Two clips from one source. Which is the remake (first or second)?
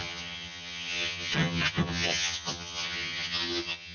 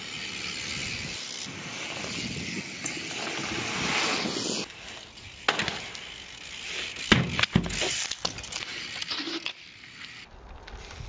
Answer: first